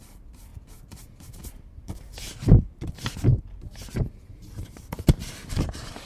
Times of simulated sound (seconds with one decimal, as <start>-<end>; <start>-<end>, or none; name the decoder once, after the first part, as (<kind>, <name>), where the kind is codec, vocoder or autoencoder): 0.0-0.5 (vocoder, BigVGAN v2); 2.9-6.1